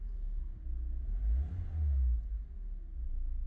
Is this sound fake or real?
real